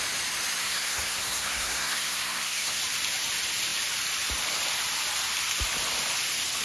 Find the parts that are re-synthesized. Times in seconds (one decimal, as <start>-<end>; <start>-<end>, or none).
0.6-2.8